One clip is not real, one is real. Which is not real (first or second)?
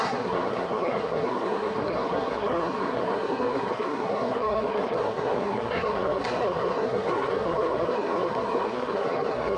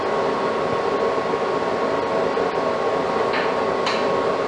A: first